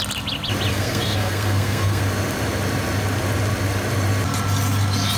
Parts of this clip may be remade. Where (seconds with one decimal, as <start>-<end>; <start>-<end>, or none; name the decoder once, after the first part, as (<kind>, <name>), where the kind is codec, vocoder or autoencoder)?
0.7-2.0 (codec, SNAC)